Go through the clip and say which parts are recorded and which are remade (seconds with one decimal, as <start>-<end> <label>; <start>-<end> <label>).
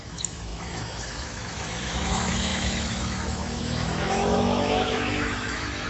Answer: 0.0-5.9 remade